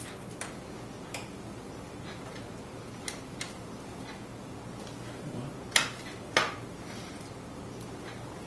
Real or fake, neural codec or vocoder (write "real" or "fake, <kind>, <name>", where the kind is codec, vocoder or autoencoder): real